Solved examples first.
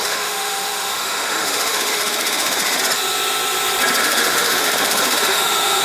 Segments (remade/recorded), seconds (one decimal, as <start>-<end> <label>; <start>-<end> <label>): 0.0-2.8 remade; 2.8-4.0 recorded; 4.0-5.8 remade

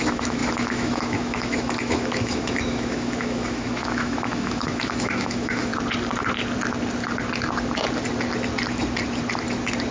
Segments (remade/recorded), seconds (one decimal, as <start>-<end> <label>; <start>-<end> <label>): 0.0-5.7 remade; 5.7-9.9 recorded

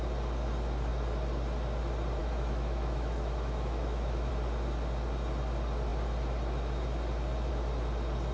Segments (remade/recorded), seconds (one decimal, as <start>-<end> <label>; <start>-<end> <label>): 0.0-2.2 recorded; 2.2-4.3 remade; 4.3-8.3 recorded

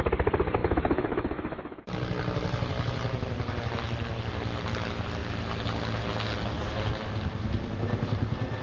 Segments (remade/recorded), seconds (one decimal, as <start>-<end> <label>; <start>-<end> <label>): 0.0-0.6 recorded; 0.6-1.8 remade; 1.8-8.6 recorded

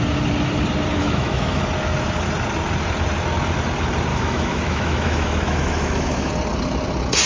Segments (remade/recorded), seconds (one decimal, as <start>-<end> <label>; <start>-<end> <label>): 0.0-1.0 recorded; 1.0-1.6 remade; 1.6-4.1 recorded; 4.1-6.3 remade; 6.3-7.3 recorded

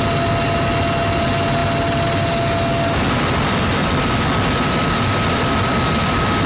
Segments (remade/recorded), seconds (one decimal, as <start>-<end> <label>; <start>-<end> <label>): 0.0-6.5 recorded